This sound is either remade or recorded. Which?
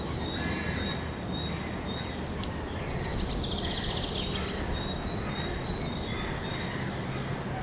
recorded